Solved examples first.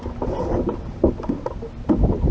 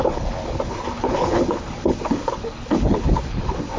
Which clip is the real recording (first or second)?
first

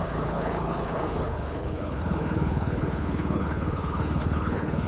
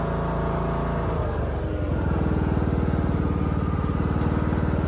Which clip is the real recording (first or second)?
second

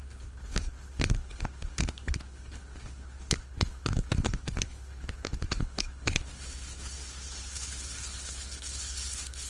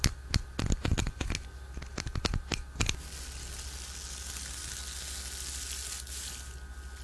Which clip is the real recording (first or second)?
second